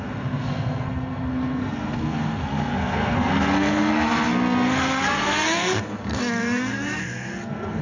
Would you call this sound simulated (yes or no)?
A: yes